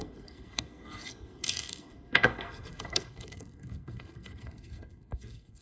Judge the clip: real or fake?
fake